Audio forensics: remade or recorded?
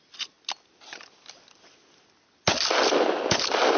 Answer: recorded